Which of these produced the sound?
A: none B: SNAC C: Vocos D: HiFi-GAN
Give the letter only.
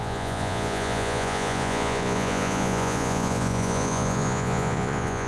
C